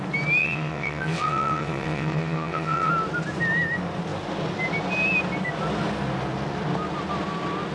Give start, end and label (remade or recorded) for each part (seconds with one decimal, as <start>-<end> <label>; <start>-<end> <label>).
0.0-0.4 recorded; 0.4-2.9 remade; 2.9-7.7 recorded